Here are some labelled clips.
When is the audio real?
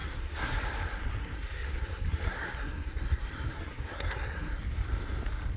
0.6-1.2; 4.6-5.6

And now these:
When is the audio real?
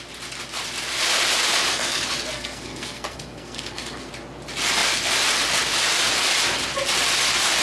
0.0-1.7; 4.1-7.6